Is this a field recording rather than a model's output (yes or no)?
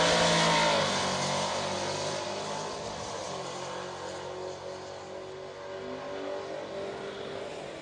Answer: yes